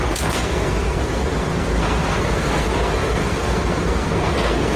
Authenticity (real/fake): fake